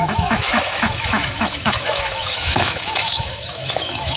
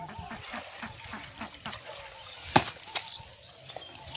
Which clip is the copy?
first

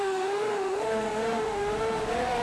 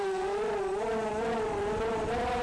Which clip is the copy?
first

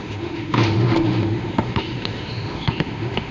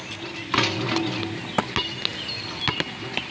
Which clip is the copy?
first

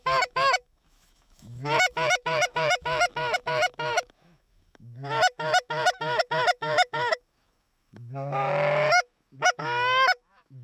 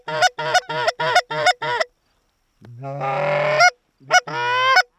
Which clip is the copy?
first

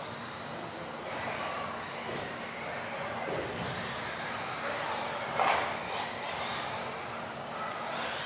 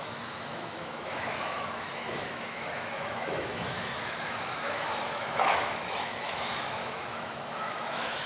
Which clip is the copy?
second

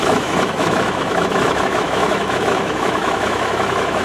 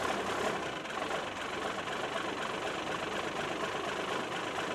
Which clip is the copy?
first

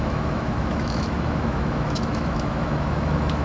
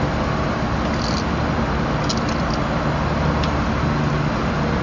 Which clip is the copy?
first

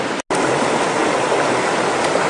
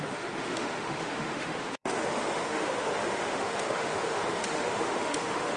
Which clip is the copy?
second